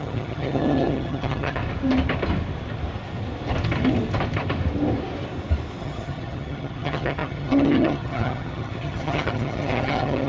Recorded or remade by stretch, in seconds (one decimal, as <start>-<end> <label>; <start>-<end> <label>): 0.0-1.6 remade; 1.6-5.8 recorded; 5.8-10.3 remade